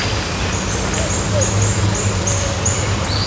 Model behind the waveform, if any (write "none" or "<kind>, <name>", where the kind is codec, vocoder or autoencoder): none